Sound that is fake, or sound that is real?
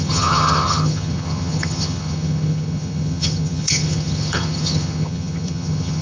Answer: fake